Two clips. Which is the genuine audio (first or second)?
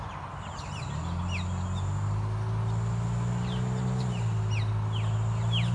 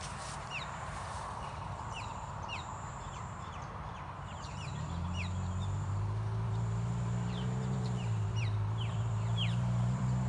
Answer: first